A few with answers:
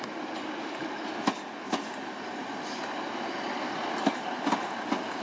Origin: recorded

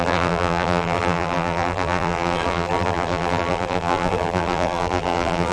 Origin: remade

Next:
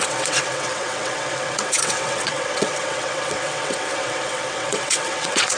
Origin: remade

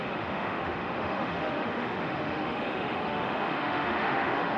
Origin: remade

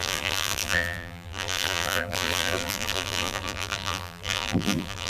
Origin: remade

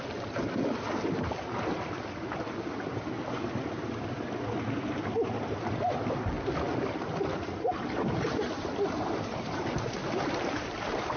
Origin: recorded